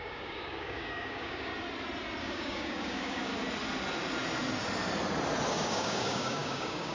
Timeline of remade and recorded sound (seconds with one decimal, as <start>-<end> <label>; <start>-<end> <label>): 0.0-1.5 remade; 1.5-2.2 recorded; 2.2-3.3 remade; 3.3-5.5 recorded; 5.5-6.9 remade